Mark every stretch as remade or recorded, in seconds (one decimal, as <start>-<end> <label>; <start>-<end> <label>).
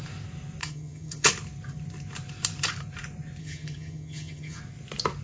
0.0-0.6 recorded; 0.6-1.3 remade; 1.3-3.4 recorded; 3.4-4.6 remade; 4.6-5.2 recorded